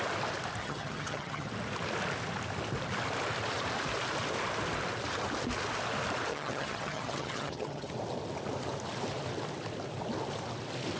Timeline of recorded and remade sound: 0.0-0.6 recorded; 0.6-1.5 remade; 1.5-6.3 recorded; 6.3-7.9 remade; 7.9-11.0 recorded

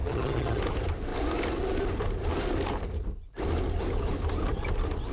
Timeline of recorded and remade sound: 0.0-0.6 remade; 0.6-5.1 recorded

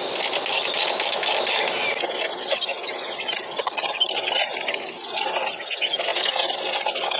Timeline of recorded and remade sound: 0.0-3.6 recorded; 3.6-4.1 remade; 4.1-7.2 recorded

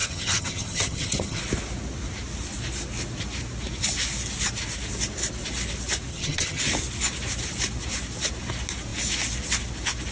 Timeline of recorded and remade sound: 0.0-1.4 remade; 1.4-6.1 recorded; 6.1-6.6 remade; 6.6-10.1 recorded

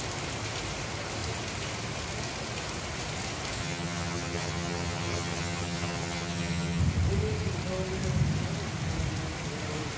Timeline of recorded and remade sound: 0.0-3.6 recorded; 3.6-6.8 remade; 6.8-10.0 recorded

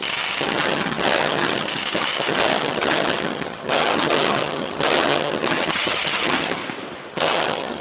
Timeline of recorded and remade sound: 0.0-6.6 remade; 6.6-7.1 recorded; 7.1-7.8 remade

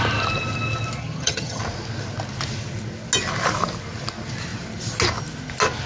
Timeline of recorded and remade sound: 0.0-1.0 recorded; 1.0-1.6 remade; 1.6-5.9 recorded